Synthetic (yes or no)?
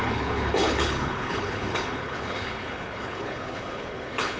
yes